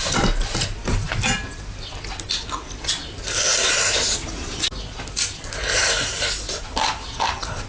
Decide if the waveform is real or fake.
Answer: real